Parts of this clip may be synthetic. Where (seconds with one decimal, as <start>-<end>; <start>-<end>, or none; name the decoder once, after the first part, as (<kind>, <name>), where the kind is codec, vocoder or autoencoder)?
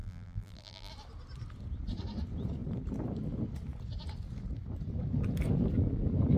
0.0-0.9 (vocoder, BigVGAN v2)